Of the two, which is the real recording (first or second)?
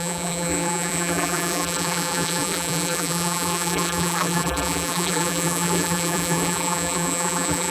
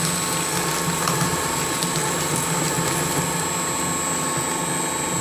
second